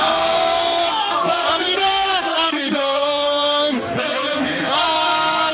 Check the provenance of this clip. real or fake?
fake